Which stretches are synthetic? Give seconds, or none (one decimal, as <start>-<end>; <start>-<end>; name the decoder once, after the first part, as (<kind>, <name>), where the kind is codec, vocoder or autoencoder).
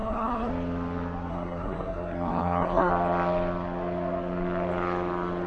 0.0-0.5 (codec, SNAC); 1.3-2.9